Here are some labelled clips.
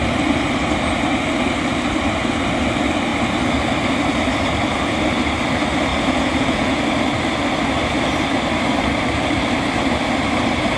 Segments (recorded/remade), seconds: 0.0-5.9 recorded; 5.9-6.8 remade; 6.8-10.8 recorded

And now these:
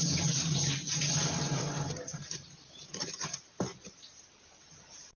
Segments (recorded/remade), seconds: 0.0-2.9 remade; 2.9-4.3 recorded; 4.3-5.2 remade

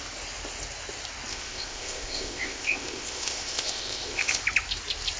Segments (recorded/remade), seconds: 0.0-1.3 recorded; 1.3-4.4 remade; 4.4-5.2 recorded

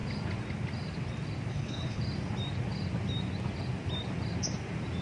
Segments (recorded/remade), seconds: 0.0-1.5 recorded; 1.5-2.0 remade; 2.0-5.0 recorded

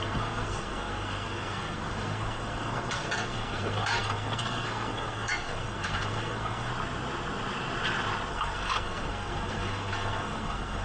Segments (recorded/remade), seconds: 0.0-6.7 remade; 6.7-8.3 recorded; 8.3-10.8 remade

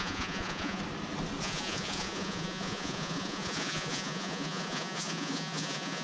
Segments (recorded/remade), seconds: 0.0-0.8 remade; 0.8-1.4 recorded; 1.4-6.0 remade

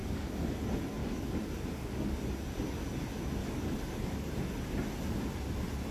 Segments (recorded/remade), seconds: 0.0-0.6 remade; 0.6-1.0 recorded; 1.0-2.2 remade; 2.2-3.4 recorded; 3.4-4.3 remade; 4.3-5.9 recorded

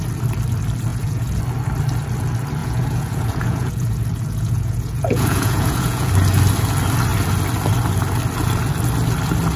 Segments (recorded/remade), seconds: 0.0-0.9 recorded; 0.9-1.4 remade; 1.4-2.6 recorded; 2.6-6.1 remade; 6.1-9.6 recorded